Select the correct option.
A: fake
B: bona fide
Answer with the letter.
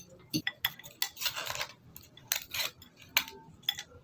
B